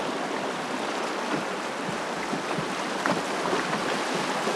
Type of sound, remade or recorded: recorded